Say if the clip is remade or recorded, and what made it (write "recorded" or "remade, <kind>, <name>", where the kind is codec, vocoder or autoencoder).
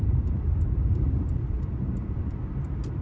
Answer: remade, vocoder, BigVGAN v2